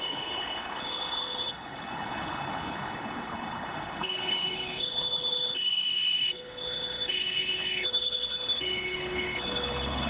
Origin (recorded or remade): remade